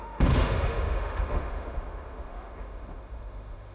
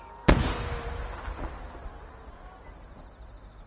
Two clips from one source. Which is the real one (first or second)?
second